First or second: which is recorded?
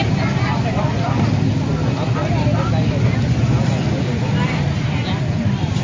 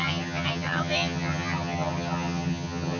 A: first